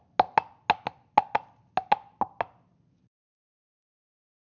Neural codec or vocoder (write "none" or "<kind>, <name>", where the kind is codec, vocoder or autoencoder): none